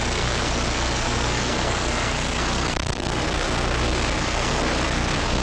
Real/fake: fake